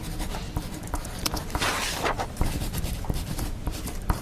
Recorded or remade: remade